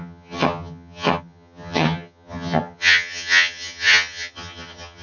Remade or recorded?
remade